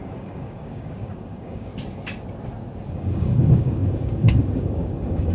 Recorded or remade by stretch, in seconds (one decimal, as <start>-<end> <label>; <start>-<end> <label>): 0.0-1.7 remade; 1.7-2.9 recorded; 2.9-5.3 remade